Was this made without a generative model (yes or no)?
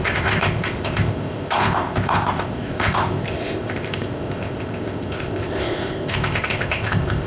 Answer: no